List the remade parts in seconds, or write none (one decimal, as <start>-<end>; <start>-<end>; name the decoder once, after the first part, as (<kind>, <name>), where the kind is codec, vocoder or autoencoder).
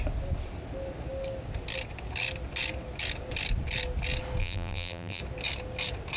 4.4-5.2 (vocoder, BigVGAN v2)